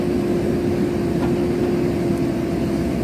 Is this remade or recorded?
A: recorded